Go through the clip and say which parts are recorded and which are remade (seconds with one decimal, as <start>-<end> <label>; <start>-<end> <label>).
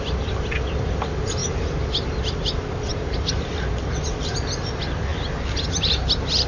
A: 0.0-1.4 remade; 1.4-2.2 recorded; 2.2-5.1 remade; 5.1-6.5 recorded